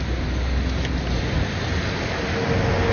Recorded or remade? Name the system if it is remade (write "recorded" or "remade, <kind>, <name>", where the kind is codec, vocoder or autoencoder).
recorded